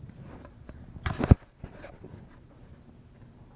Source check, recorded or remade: remade